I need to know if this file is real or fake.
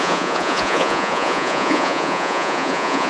fake